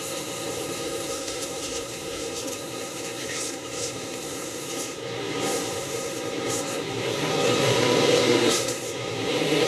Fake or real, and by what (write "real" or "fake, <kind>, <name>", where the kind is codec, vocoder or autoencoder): fake, codec, SNAC